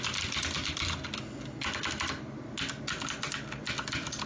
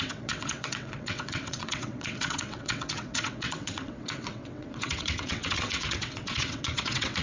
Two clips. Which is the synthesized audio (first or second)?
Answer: second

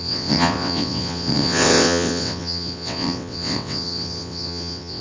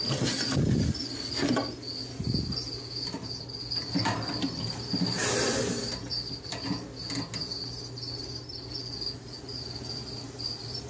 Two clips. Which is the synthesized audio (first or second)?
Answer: first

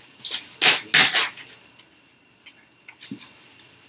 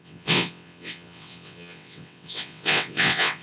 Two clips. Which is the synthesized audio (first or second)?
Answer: second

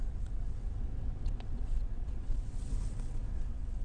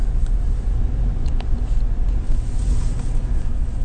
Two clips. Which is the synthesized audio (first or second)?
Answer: first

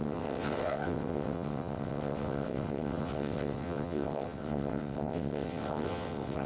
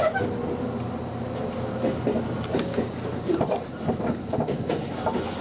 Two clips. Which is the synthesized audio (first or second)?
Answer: first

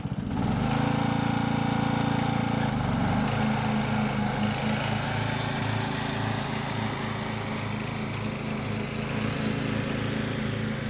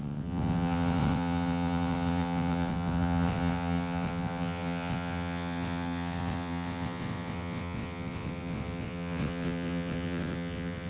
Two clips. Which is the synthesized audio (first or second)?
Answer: second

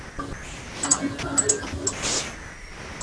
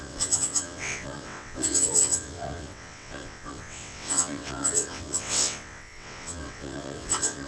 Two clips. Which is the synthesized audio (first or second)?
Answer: second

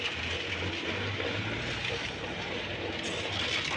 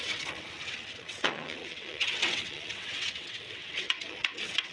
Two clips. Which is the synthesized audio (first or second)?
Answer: second